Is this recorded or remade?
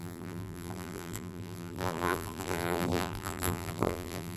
remade